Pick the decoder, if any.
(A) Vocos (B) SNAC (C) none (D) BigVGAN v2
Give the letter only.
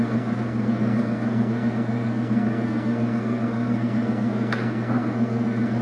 B